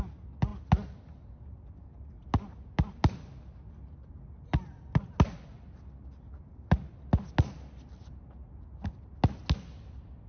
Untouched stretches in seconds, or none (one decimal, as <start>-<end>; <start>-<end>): 0.0-10.3